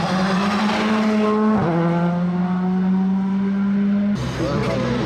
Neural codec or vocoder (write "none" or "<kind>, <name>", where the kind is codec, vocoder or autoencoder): none